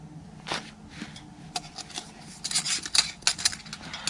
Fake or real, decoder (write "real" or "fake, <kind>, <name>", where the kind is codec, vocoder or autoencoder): real